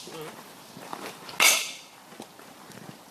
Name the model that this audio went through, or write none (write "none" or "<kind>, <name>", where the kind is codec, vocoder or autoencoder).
none